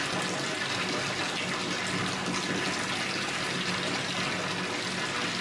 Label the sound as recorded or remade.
recorded